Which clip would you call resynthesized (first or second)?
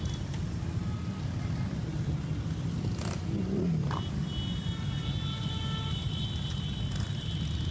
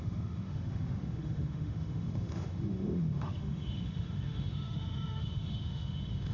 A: second